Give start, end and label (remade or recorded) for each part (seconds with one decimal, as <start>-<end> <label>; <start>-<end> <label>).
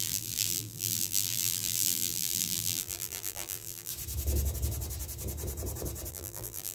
0.0-3.9 remade; 3.9-6.1 recorded; 6.1-6.7 remade